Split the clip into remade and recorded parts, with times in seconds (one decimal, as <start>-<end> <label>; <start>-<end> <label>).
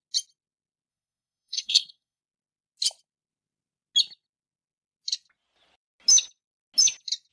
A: 0.0-0.9 recorded; 0.9-2.2 remade; 2.2-7.3 recorded